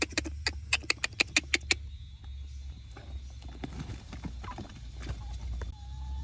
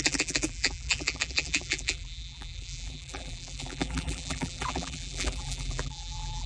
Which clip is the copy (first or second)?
second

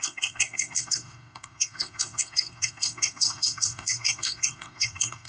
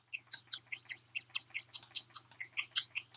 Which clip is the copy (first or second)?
first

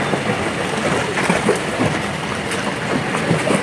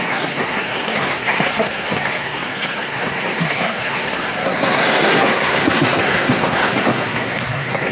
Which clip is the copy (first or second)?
second